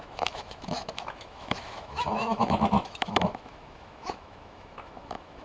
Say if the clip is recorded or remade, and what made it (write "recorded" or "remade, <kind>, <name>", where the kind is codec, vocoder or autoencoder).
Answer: remade, autoencoder, DAC-VAE